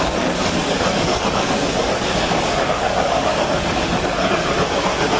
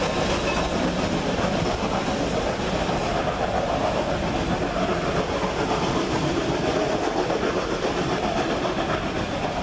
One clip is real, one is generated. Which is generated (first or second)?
first